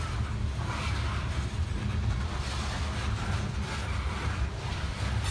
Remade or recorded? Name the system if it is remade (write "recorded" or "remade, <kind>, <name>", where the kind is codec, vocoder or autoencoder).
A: recorded